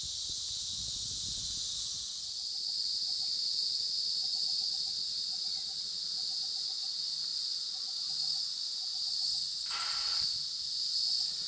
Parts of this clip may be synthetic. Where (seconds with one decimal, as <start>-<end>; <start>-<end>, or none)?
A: 5.0-5.8